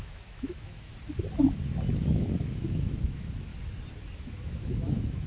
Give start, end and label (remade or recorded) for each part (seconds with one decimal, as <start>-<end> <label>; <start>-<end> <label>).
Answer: 0.0-0.9 remade; 0.9-2.1 recorded; 2.1-3.5 remade; 3.5-4.2 recorded; 4.2-5.3 remade